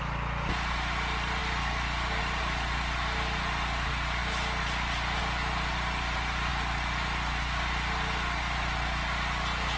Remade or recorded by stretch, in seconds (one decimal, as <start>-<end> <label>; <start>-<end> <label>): 0.0-9.8 recorded